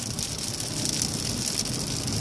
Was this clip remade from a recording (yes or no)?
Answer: no